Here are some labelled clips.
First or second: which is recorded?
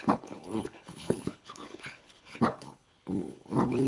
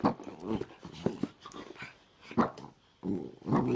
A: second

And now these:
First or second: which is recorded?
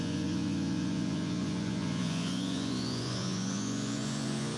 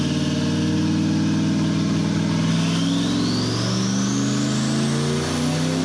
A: second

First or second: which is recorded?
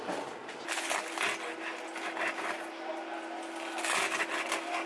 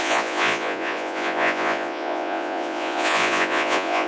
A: first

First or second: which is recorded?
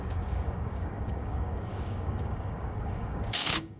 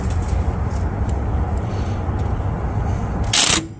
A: second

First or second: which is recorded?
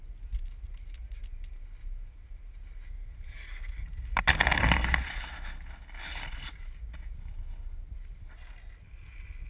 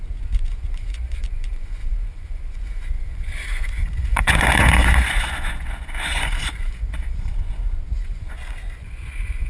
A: first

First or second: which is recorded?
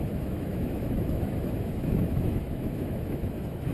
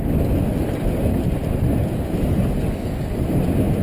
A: second